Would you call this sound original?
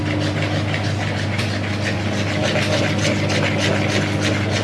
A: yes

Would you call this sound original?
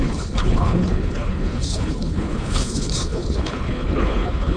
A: no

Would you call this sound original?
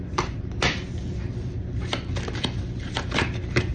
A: yes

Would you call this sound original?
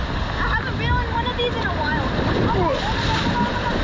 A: yes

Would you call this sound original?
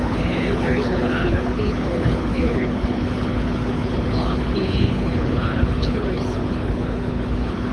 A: no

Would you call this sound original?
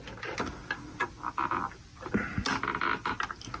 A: yes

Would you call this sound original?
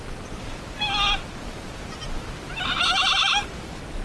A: yes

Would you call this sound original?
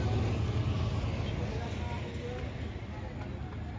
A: yes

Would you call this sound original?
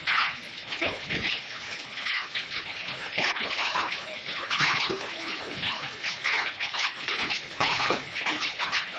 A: no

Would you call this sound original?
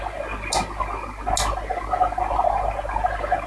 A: yes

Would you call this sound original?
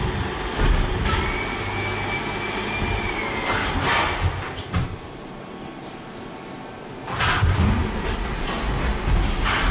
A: yes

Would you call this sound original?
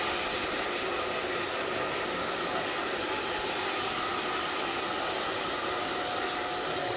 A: yes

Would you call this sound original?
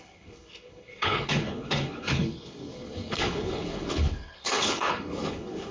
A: no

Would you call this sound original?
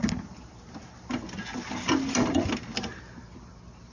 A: yes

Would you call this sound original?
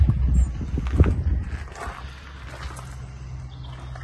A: yes